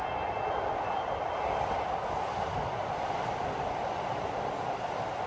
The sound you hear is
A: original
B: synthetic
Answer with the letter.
A